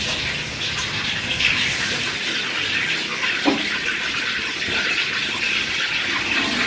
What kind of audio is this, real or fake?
real